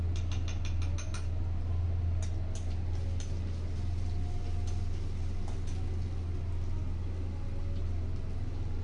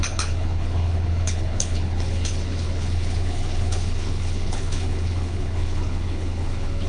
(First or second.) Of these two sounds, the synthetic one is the second